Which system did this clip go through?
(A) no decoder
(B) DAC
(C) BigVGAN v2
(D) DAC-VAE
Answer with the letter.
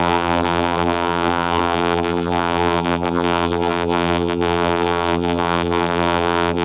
C